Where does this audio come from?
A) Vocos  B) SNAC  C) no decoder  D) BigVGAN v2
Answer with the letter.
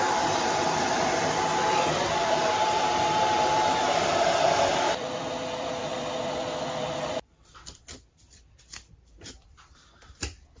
D